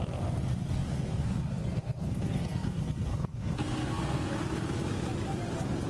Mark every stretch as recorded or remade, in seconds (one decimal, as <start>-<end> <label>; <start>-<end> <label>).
0.0-0.8 recorded; 0.8-4.3 remade; 4.3-5.9 recorded